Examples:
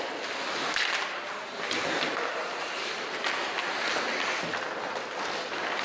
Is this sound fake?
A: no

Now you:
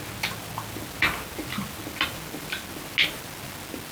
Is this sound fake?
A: no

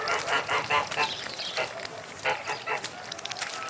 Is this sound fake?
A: no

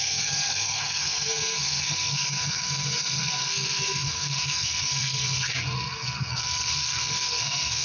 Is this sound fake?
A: yes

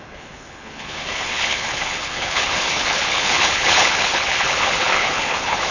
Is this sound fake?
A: yes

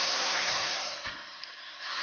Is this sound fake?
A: yes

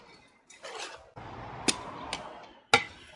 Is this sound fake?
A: no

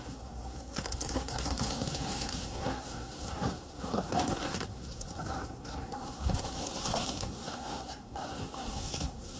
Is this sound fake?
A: yes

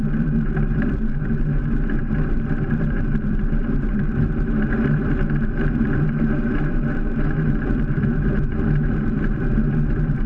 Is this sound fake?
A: yes